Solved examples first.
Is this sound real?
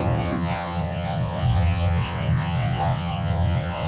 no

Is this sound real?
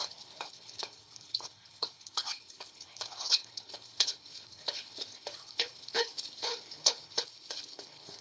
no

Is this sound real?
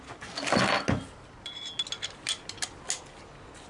yes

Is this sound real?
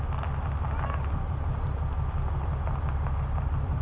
yes